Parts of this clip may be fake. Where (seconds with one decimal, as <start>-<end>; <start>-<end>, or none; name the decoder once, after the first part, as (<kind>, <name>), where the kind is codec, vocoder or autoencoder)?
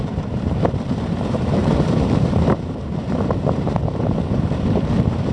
0.0-5.3 (vocoder, BigVGAN v2)